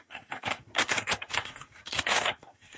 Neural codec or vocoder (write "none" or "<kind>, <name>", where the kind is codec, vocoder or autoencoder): codec, SNAC